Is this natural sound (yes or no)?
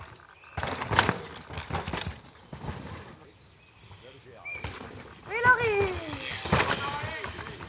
yes